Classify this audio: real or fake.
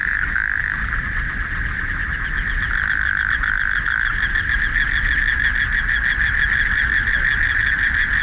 real